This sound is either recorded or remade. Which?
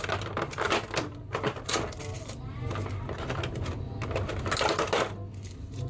recorded